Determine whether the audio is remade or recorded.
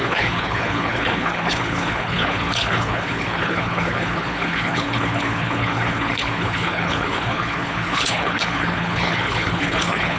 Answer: remade